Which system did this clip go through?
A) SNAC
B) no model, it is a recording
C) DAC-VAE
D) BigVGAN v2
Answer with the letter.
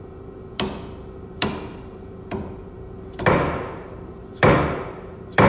D